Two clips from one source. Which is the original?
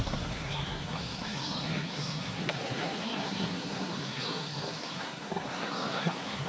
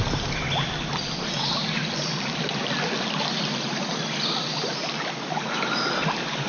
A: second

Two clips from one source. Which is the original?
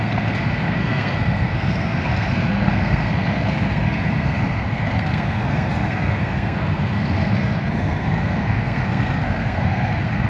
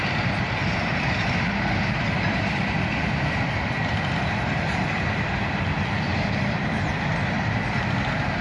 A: second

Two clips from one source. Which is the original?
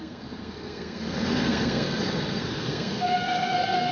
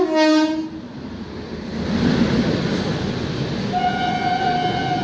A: second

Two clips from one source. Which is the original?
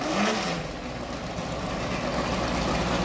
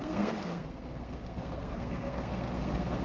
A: first